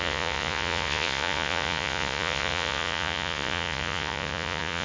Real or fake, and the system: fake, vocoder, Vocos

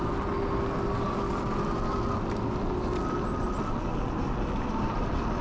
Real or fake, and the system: real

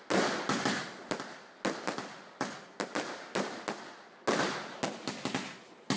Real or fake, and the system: real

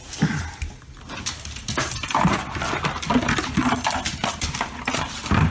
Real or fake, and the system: real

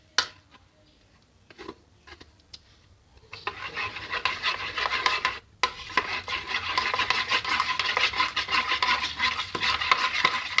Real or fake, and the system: real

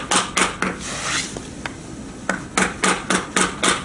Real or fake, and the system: real